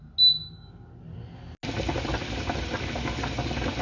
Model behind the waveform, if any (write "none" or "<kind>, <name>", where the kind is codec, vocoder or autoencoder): none